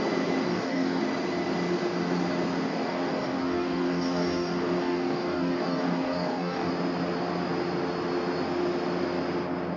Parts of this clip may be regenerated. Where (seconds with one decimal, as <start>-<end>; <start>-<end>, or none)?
0.5-1.0; 2.7-6.7

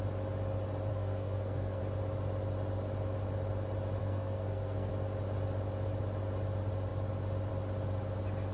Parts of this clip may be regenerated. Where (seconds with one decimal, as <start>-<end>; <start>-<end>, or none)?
0.9-1.8; 4.0-4.9

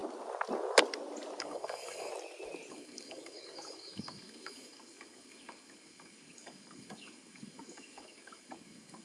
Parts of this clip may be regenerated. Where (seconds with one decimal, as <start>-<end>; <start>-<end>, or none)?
1.4-2.1; 2.7-9.0

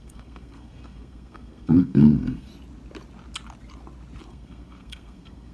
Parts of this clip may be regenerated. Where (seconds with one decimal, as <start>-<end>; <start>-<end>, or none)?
0.0-2.5; 4.3-5.5